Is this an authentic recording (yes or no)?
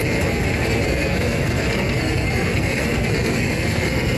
no